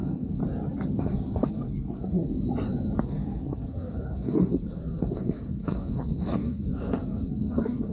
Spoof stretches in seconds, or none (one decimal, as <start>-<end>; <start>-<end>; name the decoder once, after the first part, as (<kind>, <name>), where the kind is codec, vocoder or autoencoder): 0.0-0.4 (codec, SNAC); 1.0-2.3; 3.0-7.9